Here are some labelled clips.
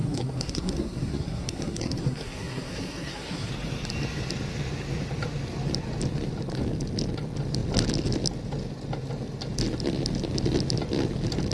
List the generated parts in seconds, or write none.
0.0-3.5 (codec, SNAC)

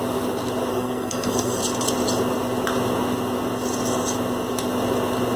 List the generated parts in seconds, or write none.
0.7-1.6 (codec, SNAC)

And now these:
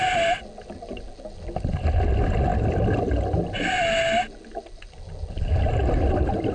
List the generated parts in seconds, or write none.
none

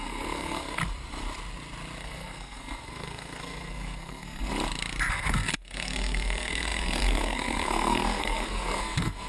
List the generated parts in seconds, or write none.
0.0-0.8 (codec, SNAC); 2.0-4.5; 5.1-9.3

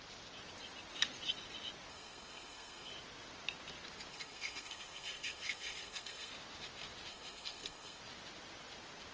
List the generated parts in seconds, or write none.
1.9-2.9 (codec, SNAC); 4.1-6.3; 7.1-8.0